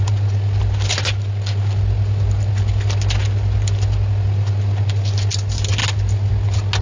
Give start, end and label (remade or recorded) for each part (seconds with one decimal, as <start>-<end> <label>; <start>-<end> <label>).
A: 0.0-6.8 recorded